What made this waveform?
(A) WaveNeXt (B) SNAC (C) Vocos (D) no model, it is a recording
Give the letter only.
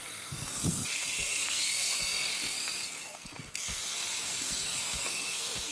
B